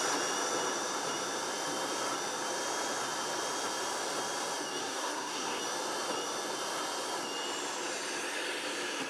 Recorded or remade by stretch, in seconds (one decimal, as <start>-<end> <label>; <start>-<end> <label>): 0.0-4.8 recorded; 4.8-5.6 remade; 5.6-9.1 recorded